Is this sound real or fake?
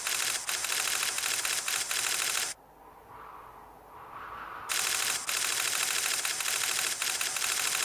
real